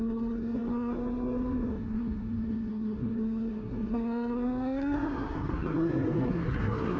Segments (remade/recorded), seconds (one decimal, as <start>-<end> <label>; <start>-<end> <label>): 0.0-7.0 remade